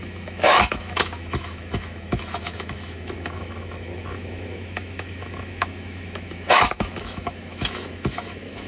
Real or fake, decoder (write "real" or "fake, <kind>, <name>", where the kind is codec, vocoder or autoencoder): fake, autoencoder, DAC-VAE